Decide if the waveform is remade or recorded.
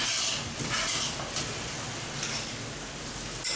recorded